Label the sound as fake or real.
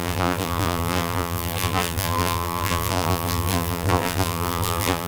fake